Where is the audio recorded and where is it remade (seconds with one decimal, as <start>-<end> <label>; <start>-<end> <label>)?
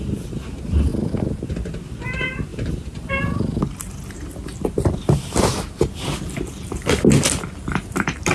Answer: 0.0-0.9 recorded; 0.9-1.5 remade; 1.5-2.5 recorded; 2.5-3.1 remade; 3.1-4.4 recorded; 4.4-7.0 remade; 7.0-8.3 recorded